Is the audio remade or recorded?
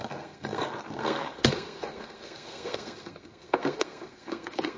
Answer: remade